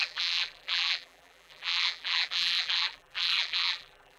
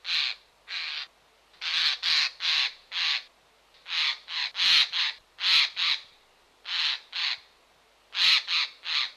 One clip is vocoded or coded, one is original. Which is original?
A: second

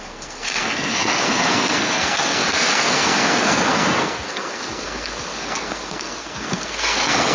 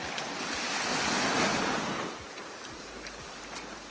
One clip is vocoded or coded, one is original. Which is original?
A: second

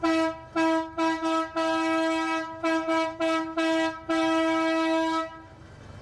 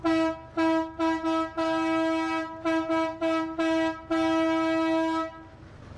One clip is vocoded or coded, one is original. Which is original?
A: second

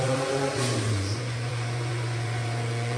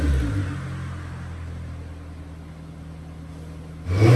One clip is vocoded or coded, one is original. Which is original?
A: second